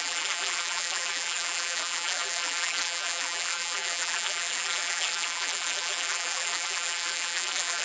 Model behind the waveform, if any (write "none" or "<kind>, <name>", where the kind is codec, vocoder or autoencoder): vocoder, BigVGAN v2